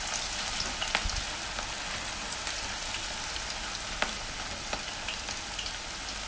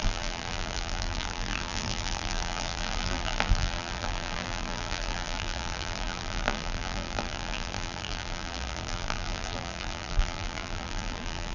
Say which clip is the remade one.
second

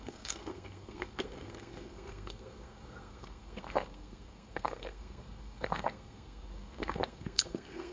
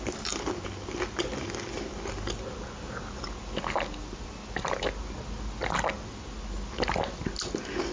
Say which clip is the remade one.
first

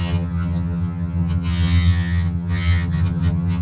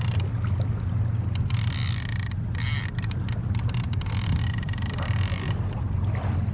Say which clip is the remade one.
first